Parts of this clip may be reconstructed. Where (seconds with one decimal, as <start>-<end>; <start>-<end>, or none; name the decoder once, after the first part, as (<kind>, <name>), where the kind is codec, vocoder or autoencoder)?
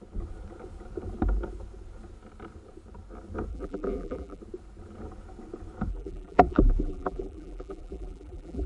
3.5-4.4 (vocoder, BigVGAN v2); 5.9-8.7